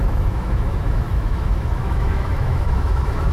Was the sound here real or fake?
fake